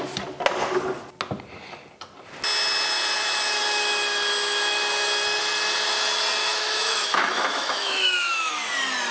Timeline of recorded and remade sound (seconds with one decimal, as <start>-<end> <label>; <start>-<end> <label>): 0.0-6.4 recorded; 6.4-8.5 remade; 8.5-9.1 recorded